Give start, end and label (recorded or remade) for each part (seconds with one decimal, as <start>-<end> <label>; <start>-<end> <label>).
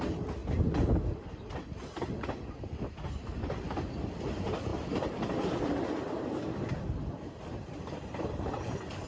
0.0-9.1 recorded